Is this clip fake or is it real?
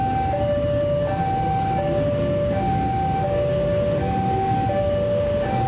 fake